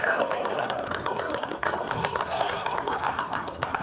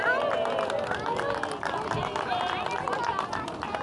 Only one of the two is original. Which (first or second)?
second